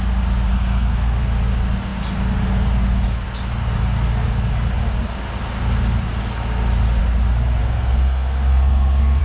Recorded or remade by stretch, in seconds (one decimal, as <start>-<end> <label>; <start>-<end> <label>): 0.0-0.5 recorded; 0.5-1.2 remade; 1.2-7.6 recorded; 7.6-9.2 remade